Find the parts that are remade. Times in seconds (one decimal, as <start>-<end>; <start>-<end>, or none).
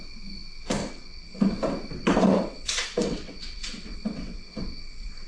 0.8-1.5; 2.0-5.3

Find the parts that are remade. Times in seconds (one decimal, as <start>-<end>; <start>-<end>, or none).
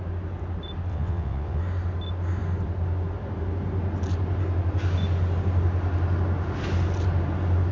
0.9-1.6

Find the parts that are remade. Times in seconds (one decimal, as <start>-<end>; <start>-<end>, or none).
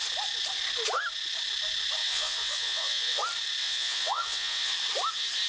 2.0-3.2; 3.6-4.7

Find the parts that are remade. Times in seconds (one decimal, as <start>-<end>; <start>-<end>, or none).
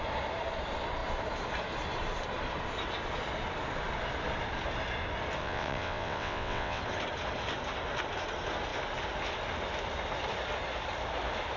5.4-6.8